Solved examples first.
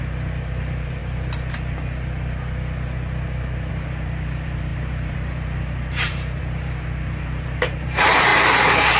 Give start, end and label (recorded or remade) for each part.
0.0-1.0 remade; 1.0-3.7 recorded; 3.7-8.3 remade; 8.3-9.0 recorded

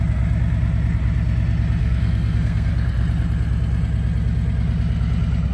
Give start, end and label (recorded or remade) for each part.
0.0-1.8 recorded; 1.8-2.7 remade; 2.7-5.5 recorded

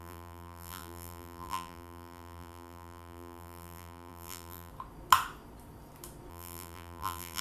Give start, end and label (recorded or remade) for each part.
0.0-4.7 remade; 4.7-6.3 recorded; 6.3-7.4 remade

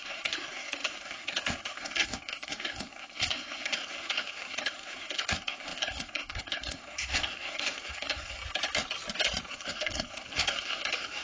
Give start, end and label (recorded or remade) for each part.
0.0-8.4 remade; 8.4-9.5 recorded; 9.5-11.2 remade

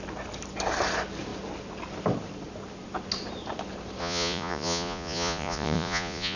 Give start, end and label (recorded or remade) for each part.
0.0-4.0 recorded; 4.0-6.4 remade

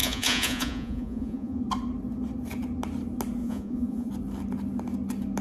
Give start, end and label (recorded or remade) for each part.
0.0-1.6 remade; 1.6-3.4 recorded; 3.4-4.1 remade; 4.1-5.4 recorded

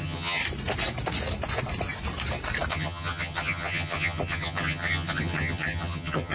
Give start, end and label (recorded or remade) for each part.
0.0-0.4 remade; 0.4-2.7 recorded; 2.7-6.3 remade